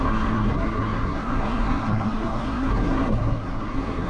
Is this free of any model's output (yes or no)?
no